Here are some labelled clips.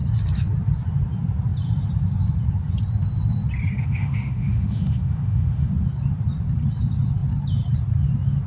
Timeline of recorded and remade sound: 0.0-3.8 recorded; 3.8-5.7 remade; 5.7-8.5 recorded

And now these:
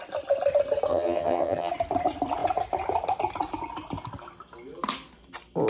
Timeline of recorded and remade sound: 0.0-0.9 recorded; 0.9-1.7 remade; 1.7-5.7 recorded

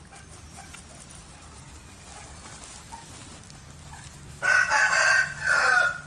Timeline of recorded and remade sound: 0.0-6.1 recorded